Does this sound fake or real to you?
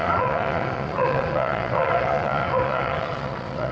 fake